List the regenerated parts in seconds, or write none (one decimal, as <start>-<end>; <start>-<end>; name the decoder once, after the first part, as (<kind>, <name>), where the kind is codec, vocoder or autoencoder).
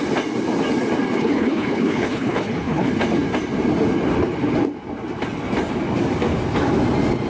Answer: 1.2-2.9 (codec, HILCodec)